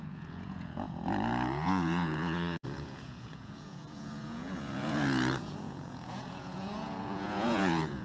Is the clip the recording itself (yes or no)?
no